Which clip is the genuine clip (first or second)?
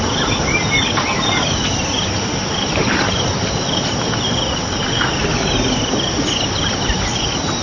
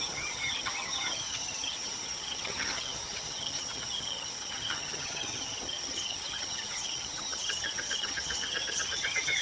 first